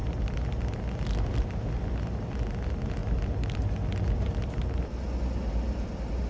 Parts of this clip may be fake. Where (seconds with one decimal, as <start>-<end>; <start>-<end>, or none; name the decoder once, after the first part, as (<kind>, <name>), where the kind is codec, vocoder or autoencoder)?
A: none